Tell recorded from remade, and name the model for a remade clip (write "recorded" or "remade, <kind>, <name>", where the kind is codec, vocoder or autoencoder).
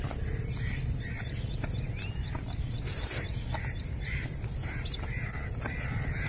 recorded